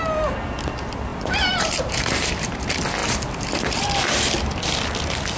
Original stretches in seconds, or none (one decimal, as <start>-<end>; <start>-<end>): 0.0-1.1; 2.6-3.0; 4.1-5.4